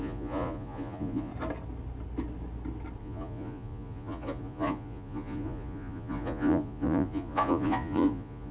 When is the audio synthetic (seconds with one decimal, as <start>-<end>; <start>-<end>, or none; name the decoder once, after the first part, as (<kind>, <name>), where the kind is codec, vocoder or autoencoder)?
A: 0.0-1.3 (vocoder, Vocos); 3.0-8.5